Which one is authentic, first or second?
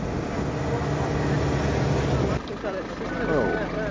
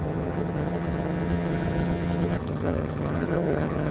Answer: first